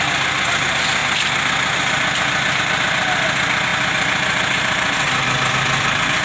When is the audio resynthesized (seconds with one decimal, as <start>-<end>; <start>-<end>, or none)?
none